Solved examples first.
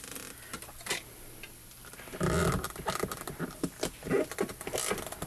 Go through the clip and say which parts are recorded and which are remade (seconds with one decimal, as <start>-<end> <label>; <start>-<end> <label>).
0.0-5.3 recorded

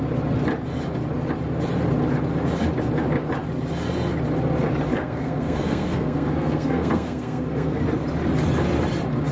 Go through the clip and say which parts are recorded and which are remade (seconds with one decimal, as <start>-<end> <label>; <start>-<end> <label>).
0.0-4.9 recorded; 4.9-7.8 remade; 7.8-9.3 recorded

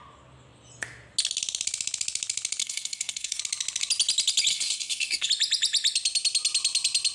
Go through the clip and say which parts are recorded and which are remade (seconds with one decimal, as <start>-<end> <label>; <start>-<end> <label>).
0.0-2.6 recorded; 2.6-3.4 remade; 3.4-4.5 recorded; 4.5-5.3 remade; 5.3-7.1 recorded

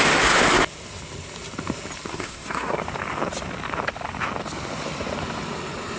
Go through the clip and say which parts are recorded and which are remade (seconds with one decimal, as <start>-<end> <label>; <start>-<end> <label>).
0.0-2.1 recorded; 2.1-2.8 remade; 2.8-6.0 recorded

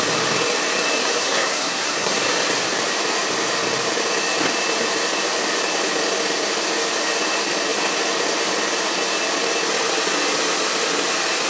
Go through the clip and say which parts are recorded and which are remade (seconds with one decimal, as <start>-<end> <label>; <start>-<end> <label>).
0.0-1.0 recorded; 1.0-2.2 remade; 2.2-11.5 recorded